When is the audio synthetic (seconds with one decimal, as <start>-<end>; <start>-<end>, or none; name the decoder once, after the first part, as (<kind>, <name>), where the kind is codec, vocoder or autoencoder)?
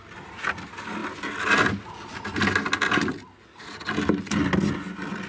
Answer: none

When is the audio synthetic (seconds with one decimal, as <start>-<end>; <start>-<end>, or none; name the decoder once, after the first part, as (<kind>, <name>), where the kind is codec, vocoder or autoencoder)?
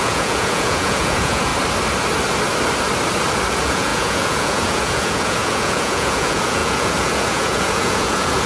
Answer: 0.0-1.5 (vocoder, Vocos); 3.5-8.5